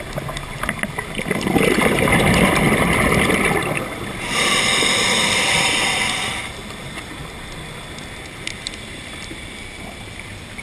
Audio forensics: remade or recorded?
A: recorded